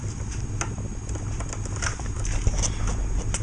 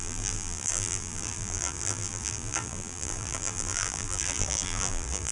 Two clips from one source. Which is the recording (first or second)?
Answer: first